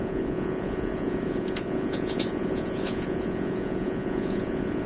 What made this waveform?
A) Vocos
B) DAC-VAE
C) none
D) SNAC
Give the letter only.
A